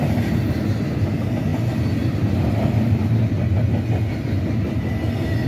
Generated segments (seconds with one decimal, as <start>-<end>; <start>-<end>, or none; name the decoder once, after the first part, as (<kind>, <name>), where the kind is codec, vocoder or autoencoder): none